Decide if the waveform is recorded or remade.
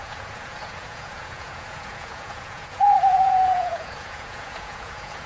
remade